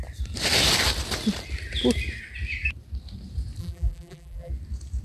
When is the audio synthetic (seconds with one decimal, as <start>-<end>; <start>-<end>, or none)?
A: 3.6-4.5

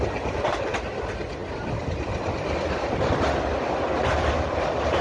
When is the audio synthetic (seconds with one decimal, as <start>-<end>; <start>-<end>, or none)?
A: none

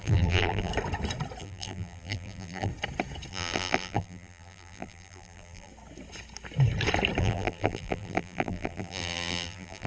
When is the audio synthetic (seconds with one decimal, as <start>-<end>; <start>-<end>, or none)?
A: 0.0-0.7; 1.4-2.7; 3.3-5.7; 7.2-9.9

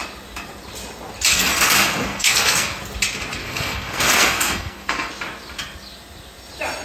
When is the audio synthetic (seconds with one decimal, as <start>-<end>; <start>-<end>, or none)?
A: 1.3-2.8; 3.4-5.1

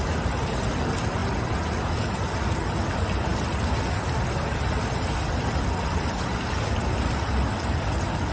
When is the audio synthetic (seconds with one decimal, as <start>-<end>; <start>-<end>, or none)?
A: 3.3-7.3

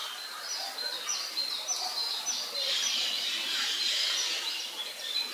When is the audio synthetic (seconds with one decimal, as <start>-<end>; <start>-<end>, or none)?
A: 0.0-5.3

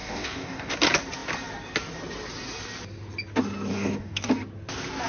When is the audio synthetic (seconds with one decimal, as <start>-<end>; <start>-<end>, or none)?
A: 0.0-0.7; 3.7-4.3

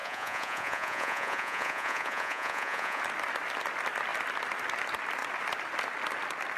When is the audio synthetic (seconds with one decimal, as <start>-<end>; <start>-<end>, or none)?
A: 0.0-3.0